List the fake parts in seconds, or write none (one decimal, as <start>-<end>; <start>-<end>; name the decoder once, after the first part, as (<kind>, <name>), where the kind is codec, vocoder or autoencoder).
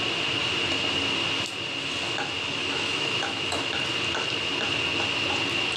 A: 2.6-3.7 (autoencoder, DAC-VAE)